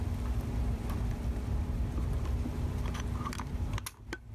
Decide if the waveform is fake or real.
real